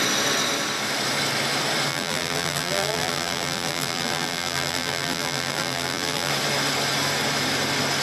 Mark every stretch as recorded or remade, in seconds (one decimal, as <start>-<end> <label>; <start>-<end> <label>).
0.0-1.9 recorded; 1.9-6.3 remade; 6.3-8.0 recorded